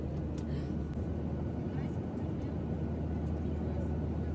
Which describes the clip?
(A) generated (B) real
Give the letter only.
B